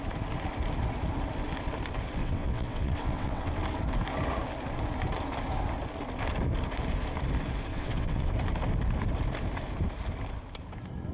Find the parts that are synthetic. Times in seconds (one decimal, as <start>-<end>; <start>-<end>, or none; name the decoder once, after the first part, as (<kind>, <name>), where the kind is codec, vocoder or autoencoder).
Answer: 2.2-3.5 (vocoder, WaveNeXt); 7.7-8.3